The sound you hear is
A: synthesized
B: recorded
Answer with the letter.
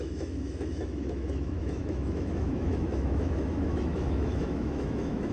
A